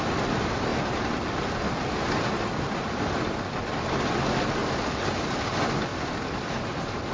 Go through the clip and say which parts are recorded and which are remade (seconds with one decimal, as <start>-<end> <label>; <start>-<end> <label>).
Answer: 0.0-4.6 recorded; 4.6-5.3 remade; 5.3-5.9 recorded; 5.9-7.1 remade